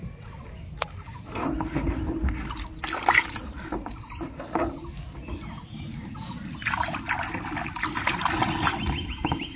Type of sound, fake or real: real